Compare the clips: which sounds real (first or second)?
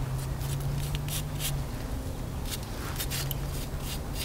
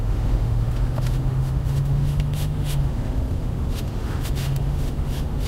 first